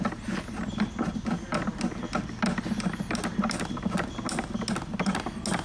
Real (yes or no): yes